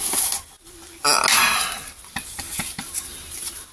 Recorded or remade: recorded